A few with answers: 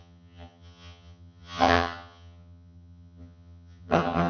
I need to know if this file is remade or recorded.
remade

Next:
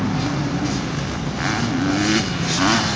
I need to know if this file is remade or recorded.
recorded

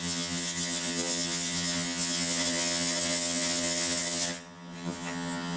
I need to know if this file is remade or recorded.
remade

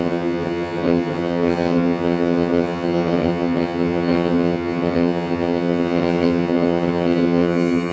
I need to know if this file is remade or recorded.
remade